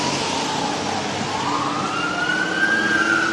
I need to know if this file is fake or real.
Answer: real